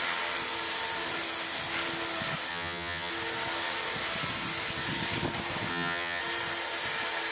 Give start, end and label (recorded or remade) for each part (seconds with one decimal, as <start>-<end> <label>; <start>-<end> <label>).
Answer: 0.0-2.5 recorded; 2.5-3.1 remade; 3.1-5.7 recorded; 5.7-6.2 remade; 6.2-7.3 recorded